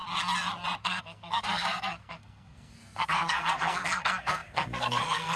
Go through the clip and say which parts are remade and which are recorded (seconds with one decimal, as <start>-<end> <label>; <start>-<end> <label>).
0.0-0.8 recorded; 0.8-5.4 remade